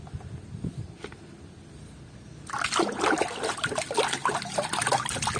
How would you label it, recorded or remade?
recorded